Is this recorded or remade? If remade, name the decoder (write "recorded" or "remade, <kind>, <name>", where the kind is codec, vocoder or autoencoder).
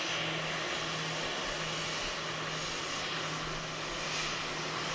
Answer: recorded